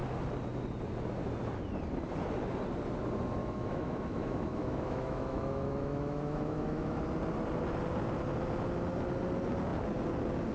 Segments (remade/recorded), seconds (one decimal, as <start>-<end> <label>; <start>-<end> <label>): 0.0-3.4 recorded; 3.4-7.0 remade; 7.0-10.5 recorded